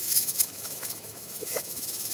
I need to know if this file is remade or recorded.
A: remade